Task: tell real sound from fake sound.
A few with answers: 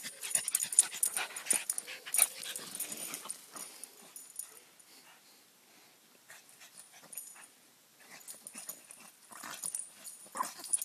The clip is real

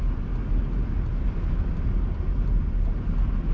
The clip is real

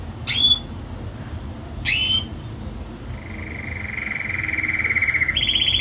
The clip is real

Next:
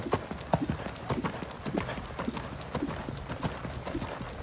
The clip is real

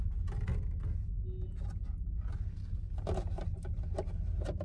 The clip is real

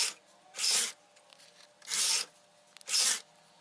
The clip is real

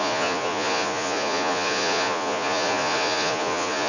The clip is fake